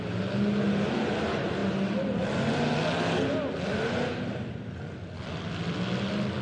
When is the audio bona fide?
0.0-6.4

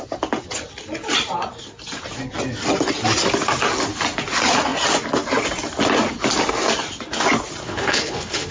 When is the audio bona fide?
0.0-7.6